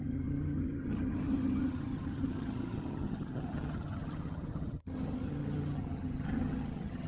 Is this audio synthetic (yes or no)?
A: yes